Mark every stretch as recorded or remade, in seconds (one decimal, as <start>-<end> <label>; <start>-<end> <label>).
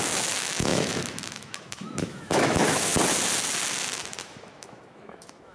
0.0-2.9 remade; 2.9-4.2 recorded; 4.2-5.5 remade